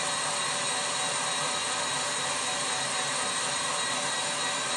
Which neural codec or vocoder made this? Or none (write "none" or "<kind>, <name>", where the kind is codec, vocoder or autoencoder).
none